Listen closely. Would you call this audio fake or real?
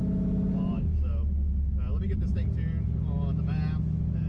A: real